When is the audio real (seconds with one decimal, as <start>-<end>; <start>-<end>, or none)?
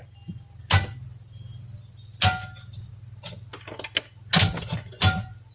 0.0-5.5